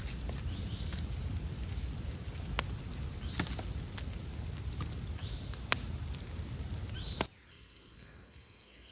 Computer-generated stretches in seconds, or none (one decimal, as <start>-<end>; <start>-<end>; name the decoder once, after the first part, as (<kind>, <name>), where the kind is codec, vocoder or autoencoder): 7.5-8.9 (codec, SNAC)